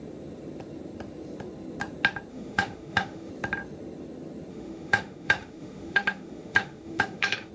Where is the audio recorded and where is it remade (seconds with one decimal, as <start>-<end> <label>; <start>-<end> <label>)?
0.0-2.3 recorded; 2.3-3.3 remade; 3.3-4.5 recorded; 4.5-7.5 remade